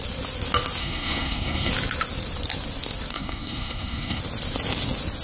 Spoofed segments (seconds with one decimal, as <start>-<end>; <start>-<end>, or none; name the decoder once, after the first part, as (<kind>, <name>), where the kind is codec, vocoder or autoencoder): 0.8-1.7 (codec, SNAC); 3.1-4.2